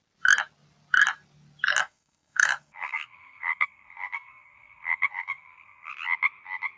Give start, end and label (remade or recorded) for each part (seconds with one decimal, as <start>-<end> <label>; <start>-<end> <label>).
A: 0.0-1.8 recorded; 1.8-5.9 remade; 5.9-6.8 recorded